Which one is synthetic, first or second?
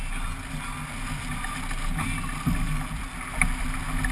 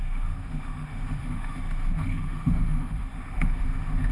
second